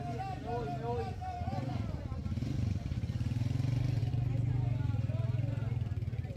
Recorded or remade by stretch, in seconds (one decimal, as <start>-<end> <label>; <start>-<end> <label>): 0.0-6.4 recorded